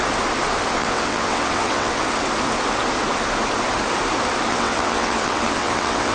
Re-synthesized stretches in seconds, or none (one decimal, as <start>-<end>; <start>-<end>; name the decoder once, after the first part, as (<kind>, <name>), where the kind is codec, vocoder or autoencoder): 0.7-2.0 (vocoder, WaveNeXt); 4.5-6.1